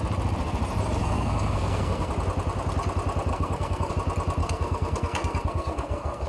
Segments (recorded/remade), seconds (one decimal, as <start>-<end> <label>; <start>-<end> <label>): 0.0-1.0 recorded; 1.0-2.1 remade; 2.1-3.3 recorded; 3.3-3.9 remade; 3.9-4.4 recorded; 4.4-6.3 remade